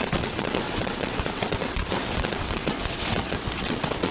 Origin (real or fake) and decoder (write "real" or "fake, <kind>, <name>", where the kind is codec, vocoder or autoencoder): fake, vocoder, WaveNeXt